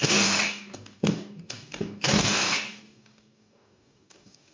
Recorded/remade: remade